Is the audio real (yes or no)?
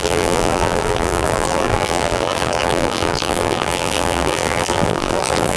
no